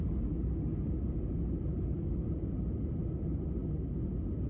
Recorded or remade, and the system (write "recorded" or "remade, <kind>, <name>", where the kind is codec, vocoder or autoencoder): recorded